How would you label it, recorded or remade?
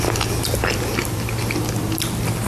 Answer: recorded